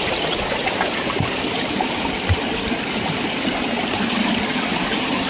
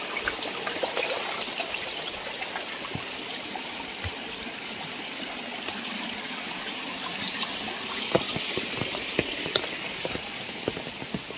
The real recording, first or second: second